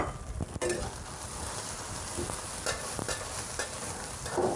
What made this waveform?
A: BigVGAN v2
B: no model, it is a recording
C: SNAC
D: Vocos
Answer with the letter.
B